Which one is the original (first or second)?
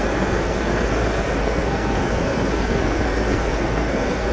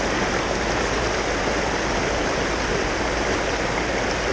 second